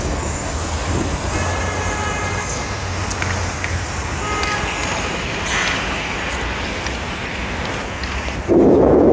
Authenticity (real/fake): real